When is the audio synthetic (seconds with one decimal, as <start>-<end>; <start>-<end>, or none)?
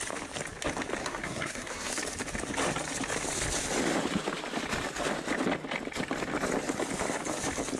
1.0-1.9